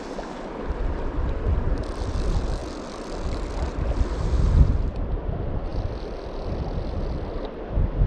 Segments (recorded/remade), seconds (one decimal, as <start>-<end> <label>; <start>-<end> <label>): 0.0-8.1 recorded